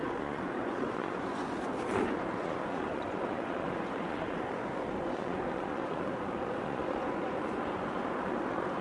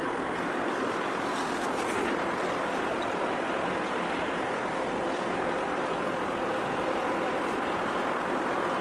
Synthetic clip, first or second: first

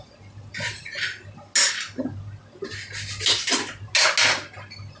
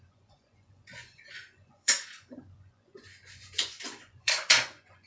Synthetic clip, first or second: second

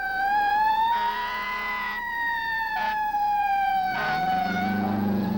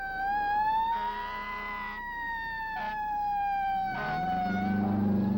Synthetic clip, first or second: first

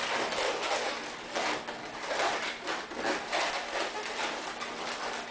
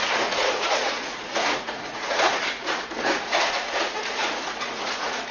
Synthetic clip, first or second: second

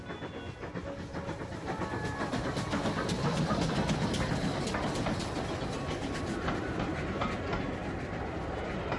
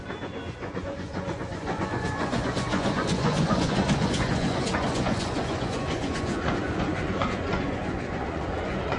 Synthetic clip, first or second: second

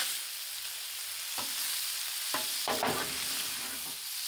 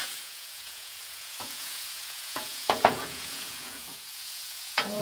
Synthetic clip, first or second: second